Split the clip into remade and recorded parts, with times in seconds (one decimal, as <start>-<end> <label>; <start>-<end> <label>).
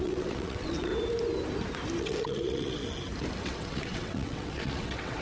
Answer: 0.0-0.9 remade; 0.9-2.0 recorded; 2.0-2.8 remade; 2.8-3.4 recorded; 3.4-5.2 remade